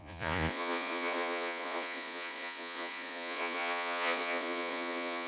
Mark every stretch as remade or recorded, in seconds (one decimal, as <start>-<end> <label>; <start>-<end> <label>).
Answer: 0.0-5.3 remade